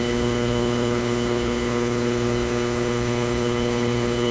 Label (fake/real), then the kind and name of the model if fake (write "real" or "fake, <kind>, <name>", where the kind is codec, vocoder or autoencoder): fake, codec, HILCodec